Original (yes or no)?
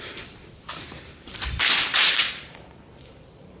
no